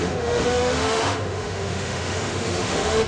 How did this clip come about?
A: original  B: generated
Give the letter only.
B